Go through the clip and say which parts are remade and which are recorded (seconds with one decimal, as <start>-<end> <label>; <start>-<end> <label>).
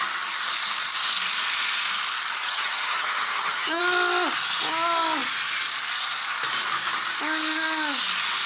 0.0-2.4 recorded; 2.4-3.8 remade; 3.8-8.5 recorded